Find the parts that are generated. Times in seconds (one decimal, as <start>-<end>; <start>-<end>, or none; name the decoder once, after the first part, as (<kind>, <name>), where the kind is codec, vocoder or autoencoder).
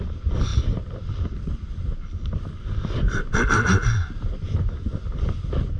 none